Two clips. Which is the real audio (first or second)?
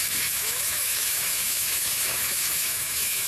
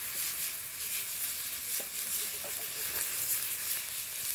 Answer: second